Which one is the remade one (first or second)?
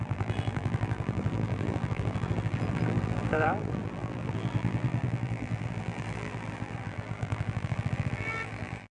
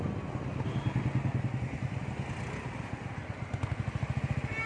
first